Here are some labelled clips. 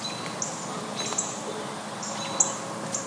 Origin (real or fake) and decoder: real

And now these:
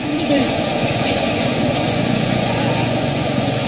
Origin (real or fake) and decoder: fake, vocoder, Vocos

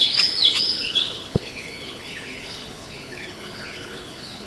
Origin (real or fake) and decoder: fake, codec, HILCodec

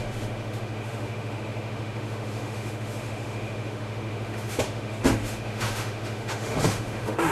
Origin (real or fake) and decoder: fake, autoencoder, DAC-VAE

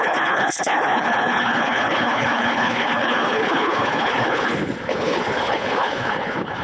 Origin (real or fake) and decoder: fake, codec, HILCodec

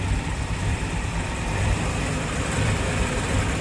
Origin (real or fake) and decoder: fake, vocoder, BigVGAN v2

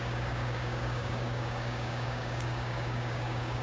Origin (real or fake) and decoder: fake, codec, DAC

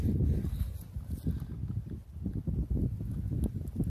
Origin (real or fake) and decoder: real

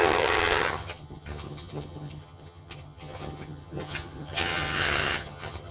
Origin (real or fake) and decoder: fake, vocoder, HiFi-GAN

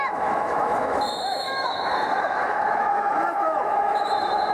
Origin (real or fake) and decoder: fake, autoencoder, DAC-VAE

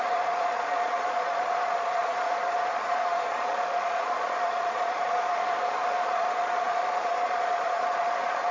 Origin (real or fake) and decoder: fake, vocoder, Vocos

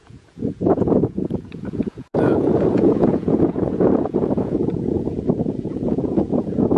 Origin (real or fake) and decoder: fake, vocoder, Vocos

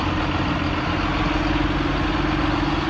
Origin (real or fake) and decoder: real